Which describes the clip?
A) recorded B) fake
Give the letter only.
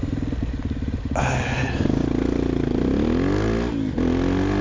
A